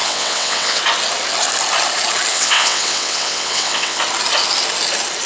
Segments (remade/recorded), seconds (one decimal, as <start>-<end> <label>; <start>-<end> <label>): 0.0-0.8 remade; 0.8-2.3 recorded; 2.3-4.0 remade; 4.0-5.3 recorded